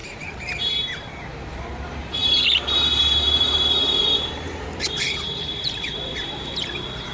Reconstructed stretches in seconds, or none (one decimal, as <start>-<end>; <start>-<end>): 0.0-0.7; 2.2-6.5